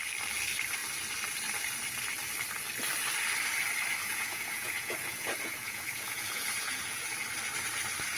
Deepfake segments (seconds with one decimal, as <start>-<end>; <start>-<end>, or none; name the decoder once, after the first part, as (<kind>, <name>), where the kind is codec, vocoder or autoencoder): 4.0-7.0 (vocoder, Vocos)